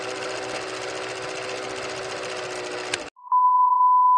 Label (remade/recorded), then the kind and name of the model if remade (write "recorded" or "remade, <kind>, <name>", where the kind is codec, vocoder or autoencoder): recorded